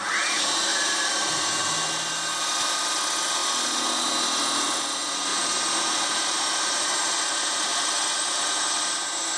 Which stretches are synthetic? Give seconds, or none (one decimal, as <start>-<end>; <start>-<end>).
0.7-1.4; 5.3-8.5

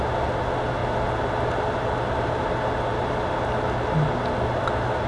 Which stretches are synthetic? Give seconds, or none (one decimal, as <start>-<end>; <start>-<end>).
none

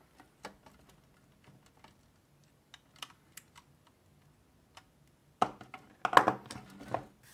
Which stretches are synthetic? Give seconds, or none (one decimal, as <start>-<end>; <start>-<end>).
none

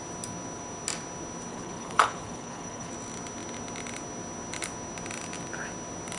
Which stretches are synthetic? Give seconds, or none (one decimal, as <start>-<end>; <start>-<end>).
1.5-2.9

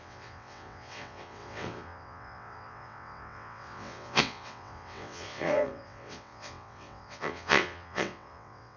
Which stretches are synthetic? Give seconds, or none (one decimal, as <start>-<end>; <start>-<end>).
0.0-8.8

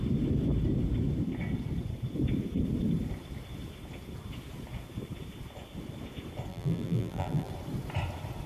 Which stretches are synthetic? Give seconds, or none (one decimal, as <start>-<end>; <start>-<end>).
6.5-7.5